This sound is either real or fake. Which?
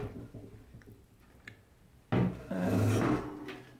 real